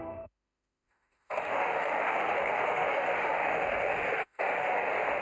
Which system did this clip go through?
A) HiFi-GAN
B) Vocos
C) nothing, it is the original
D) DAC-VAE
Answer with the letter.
D